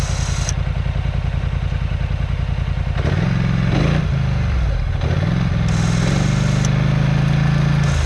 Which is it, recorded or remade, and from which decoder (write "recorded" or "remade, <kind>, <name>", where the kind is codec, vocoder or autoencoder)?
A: recorded